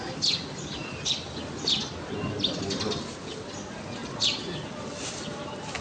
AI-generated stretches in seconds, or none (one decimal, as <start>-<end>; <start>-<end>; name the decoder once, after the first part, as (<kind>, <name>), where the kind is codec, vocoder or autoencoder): none